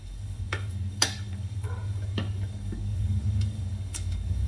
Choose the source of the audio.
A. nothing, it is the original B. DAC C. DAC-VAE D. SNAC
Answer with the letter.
B